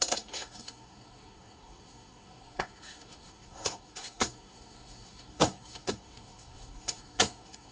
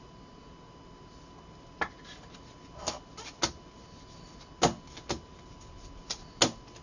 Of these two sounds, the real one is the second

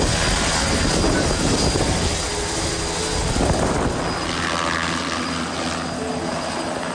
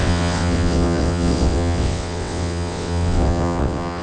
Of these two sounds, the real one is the first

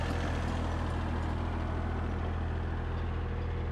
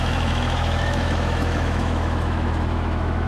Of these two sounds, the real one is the first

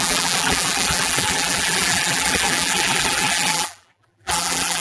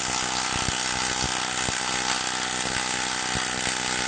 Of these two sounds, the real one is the second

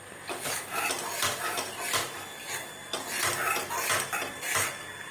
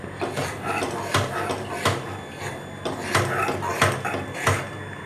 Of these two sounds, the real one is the second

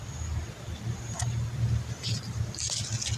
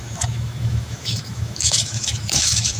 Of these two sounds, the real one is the first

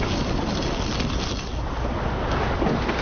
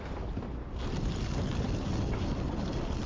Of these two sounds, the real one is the first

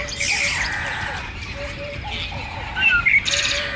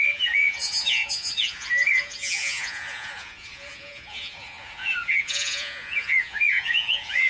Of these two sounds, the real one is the first